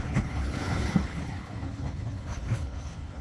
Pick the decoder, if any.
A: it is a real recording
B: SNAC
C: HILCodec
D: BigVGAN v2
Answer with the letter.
C